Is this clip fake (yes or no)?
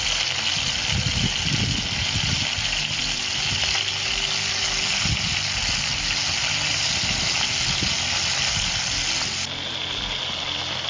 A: no